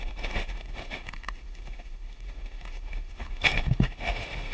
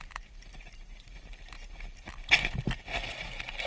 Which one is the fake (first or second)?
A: first